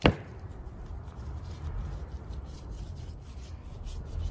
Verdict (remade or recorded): remade